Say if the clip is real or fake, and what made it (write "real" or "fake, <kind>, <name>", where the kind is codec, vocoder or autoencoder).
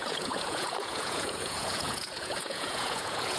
fake, vocoder, Vocos